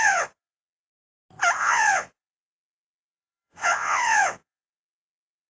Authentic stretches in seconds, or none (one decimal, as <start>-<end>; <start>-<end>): 0.9-1.6